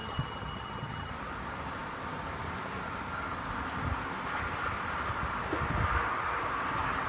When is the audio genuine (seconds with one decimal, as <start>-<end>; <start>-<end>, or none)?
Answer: 1.1-7.1